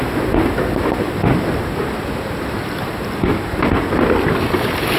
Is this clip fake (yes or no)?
no